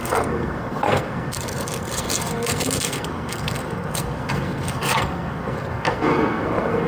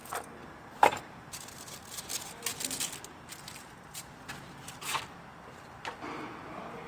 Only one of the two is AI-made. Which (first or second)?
first